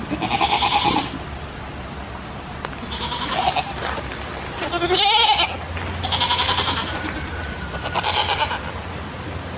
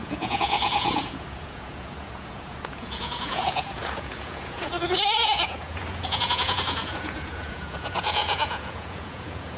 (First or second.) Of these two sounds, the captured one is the first